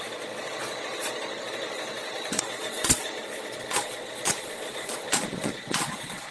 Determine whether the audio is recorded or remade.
remade